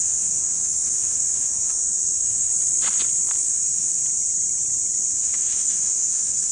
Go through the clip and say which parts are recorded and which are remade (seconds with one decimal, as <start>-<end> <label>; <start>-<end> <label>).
0.0-2.5 remade; 2.5-3.4 recorded; 3.4-4.0 remade; 4.0-5.1 recorded; 5.1-6.5 remade